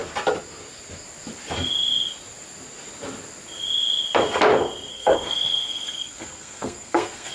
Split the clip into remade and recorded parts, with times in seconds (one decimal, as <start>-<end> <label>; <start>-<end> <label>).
0.0-4.9 recorded; 4.9-7.3 remade